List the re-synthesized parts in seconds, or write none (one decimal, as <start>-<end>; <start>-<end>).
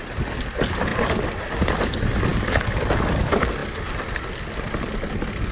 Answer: 2.3-3.2